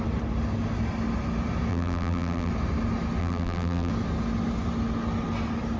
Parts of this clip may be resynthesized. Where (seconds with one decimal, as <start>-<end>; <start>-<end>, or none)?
1.7-2.5; 3.2-3.9